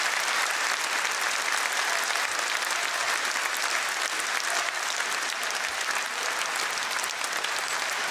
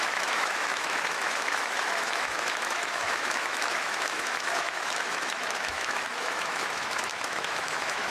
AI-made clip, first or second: second